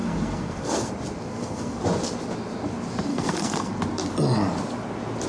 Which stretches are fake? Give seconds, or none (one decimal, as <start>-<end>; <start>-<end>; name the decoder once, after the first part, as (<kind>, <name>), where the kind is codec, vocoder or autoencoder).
0.0-0.9 (codec, SNAC); 1.3-1.8; 3.1-3.7